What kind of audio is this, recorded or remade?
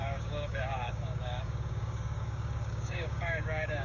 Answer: remade